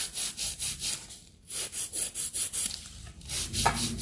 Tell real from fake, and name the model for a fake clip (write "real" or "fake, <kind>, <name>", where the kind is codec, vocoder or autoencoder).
fake, vocoder, BigVGAN v2